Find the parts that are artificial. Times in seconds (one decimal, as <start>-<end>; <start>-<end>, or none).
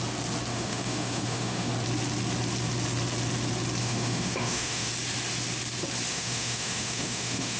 0.5-1.7; 3.8-4.9; 6.1-7.6